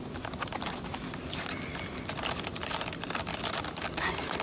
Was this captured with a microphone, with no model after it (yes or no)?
no